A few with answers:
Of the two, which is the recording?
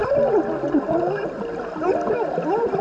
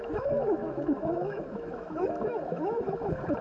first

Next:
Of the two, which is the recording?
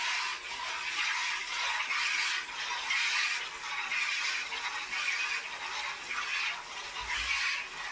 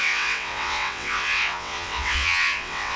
first